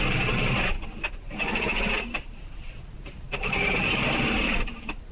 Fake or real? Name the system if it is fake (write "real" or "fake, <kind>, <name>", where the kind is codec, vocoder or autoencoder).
fake, vocoder, BigVGAN v2